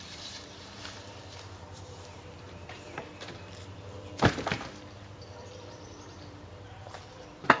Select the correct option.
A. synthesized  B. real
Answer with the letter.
A